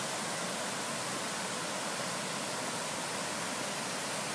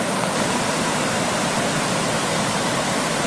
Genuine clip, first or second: first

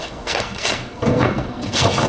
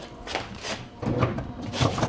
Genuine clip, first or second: second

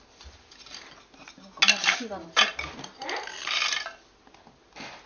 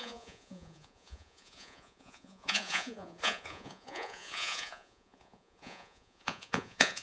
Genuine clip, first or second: first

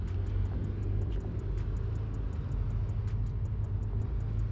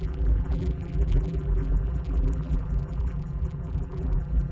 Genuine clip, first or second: first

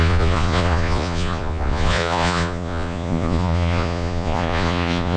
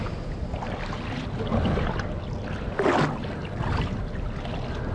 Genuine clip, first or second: second